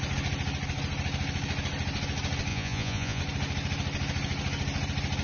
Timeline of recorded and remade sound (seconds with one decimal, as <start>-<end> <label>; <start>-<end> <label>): 0.0-2.5 recorded; 2.5-3.2 remade; 3.2-5.2 recorded